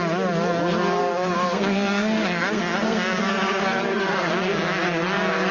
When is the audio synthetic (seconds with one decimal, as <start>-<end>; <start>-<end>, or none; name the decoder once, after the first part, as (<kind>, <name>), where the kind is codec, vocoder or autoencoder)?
1.0-4.3 (codec, SNAC)